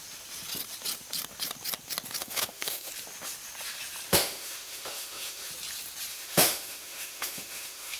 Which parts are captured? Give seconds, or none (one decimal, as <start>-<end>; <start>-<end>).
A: 0.0-2.2; 2.9-4.1; 5.5-6.1